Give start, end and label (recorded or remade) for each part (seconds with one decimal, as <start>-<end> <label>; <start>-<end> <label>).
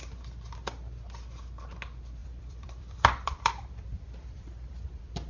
0.0-2.2 recorded; 2.2-5.3 remade